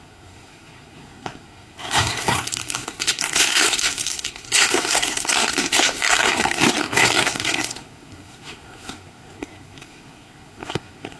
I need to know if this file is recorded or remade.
remade